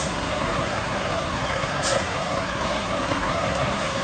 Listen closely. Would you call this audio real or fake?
fake